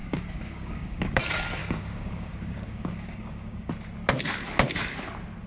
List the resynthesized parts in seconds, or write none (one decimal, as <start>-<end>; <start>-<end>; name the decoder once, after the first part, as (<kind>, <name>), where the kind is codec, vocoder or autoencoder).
0.0-1.2 (codec, DAC); 1.6-3.7